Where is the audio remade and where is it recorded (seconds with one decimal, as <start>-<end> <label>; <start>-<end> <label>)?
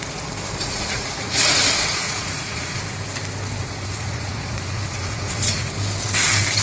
0.0-0.6 recorded; 0.6-2.8 remade; 2.8-3.6 recorded; 3.6-5.7 remade; 5.7-6.6 recorded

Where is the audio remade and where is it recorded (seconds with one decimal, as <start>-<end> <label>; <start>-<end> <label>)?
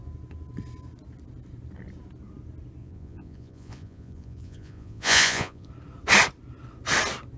0.0-2.8 recorded; 2.8-5.7 remade; 5.7-7.4 recorded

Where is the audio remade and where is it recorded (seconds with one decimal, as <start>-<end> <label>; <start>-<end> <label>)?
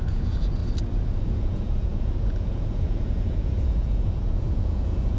0.0-0.6 remade; 0.6-1.2 recorded; 1.2-5.2 remade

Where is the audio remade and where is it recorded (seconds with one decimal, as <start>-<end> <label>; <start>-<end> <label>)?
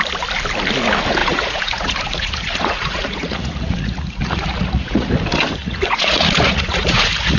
0.0-1.2 recorded; 1.2-5.1 remade; 5.1-5.6 recorded; 5.6-7.4 remade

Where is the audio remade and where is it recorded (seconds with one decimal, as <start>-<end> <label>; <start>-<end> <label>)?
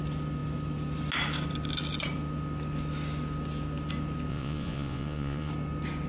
0.0-4.3 recorded; 4.3-5.5 remade; 5.5-6.1 recorded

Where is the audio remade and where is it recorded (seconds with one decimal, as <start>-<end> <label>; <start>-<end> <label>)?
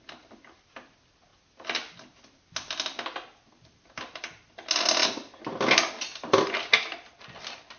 0.0-7.8 recorded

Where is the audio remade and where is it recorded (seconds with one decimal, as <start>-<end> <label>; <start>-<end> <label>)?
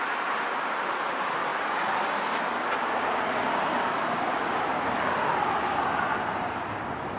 0.0-7.2 recorded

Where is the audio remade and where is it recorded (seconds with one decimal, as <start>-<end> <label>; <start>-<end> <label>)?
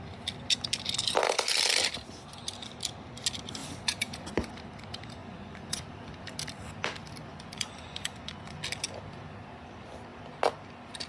0.0-3.6 recorded; 3.6-4.5 remade; 4.5-5.2 recorded; 5.2-5.8 remade; 5.8-7.3 recorded; 7.3-8.6 remade; 8.6-11.1 recorded